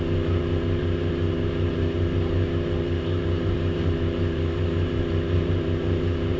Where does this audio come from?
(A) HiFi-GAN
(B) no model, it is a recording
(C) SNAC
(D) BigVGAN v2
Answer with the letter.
D